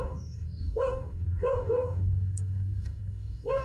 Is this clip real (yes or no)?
no